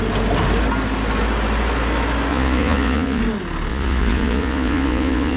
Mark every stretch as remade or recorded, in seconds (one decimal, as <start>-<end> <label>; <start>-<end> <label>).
0.0-2.3 recorded; 2.3-3.2 remade; 3.2-3.7 recorded; 3.7-5.4 remade